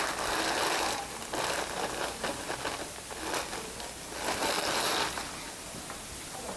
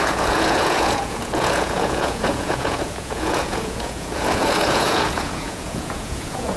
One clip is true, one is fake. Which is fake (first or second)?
second